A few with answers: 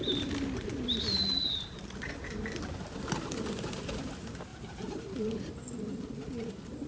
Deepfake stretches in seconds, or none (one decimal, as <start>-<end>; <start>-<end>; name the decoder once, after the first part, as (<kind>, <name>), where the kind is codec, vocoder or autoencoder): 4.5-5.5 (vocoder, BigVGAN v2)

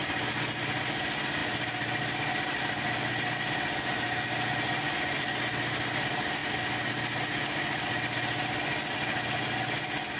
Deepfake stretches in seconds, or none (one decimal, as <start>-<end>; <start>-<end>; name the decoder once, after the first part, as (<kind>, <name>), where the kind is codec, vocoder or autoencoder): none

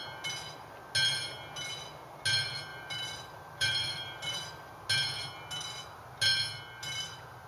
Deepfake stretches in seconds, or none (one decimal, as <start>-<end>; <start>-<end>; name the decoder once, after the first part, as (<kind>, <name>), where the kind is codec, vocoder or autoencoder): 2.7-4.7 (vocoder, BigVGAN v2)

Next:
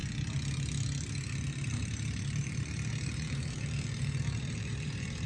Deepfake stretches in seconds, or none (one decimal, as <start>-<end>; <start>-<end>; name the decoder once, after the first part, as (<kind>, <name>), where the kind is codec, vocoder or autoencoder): 1.7-5.3 (vocoder, BigVGAN v2)

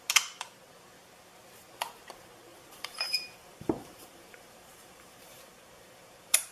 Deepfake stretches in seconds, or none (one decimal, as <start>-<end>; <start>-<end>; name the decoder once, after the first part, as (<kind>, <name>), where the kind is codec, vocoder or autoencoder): 2.5-6.5 (vocoder, BigVGAN v2)